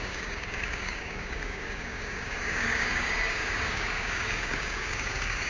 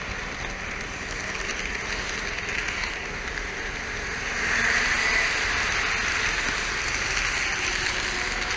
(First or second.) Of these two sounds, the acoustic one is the second